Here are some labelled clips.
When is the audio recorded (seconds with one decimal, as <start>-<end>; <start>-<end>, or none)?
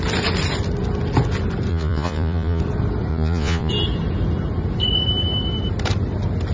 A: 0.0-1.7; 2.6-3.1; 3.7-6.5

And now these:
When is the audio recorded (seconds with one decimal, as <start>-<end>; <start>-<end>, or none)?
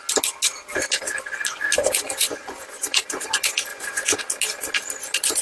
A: 0.0-1.8; 3.0-3.7; 4.2-5.4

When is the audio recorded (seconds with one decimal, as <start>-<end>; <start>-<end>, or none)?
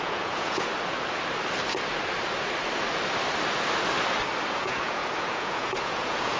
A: 0.7-4.5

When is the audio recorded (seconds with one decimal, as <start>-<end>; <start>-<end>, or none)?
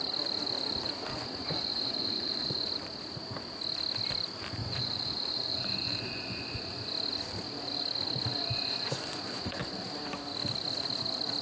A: 0.0-1.1; 2.7-4.6; 6.9-8.3; 9.6-11.4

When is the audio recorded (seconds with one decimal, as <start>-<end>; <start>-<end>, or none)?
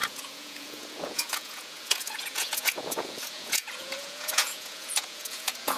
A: none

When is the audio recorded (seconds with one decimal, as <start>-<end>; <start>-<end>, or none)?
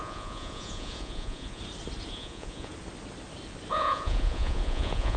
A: 1.6-2.1; 2.7-3.7